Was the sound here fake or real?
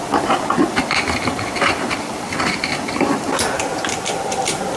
real